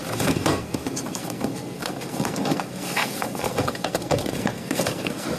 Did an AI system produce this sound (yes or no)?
yes